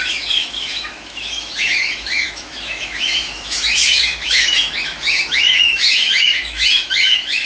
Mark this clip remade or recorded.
remade